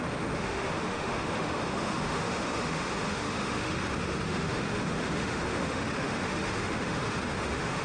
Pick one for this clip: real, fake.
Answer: fake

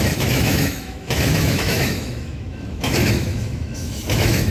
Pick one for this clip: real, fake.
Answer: fake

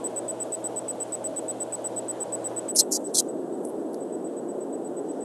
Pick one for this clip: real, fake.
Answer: real